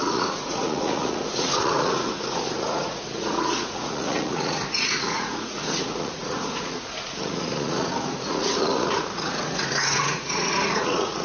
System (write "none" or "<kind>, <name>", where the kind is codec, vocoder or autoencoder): vocoder, Vocos